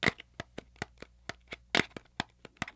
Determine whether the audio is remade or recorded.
recorded